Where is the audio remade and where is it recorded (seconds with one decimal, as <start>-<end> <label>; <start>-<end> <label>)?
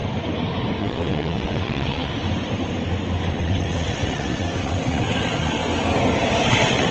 0.0-0.8 recorded; 0.8-2.1 remade; 2.1-3.3 recorded; 3.3-5.6 remade; 5.6-6.5 recorded; 6.5-6.9 remade